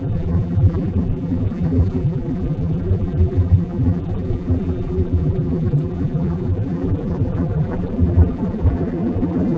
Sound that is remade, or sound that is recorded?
remade